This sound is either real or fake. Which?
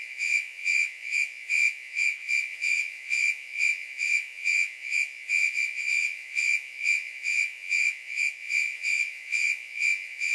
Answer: fake